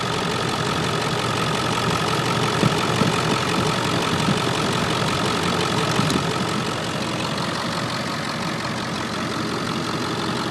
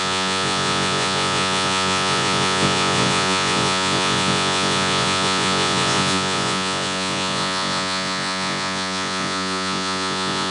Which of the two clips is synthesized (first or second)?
second